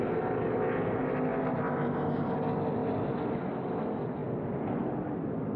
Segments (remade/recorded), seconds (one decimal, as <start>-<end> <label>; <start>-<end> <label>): 0.0-5.6 recorded